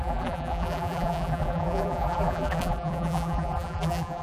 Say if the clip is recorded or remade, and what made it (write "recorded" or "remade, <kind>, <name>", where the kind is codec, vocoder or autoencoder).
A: remade, vocoder, BigVGAN v2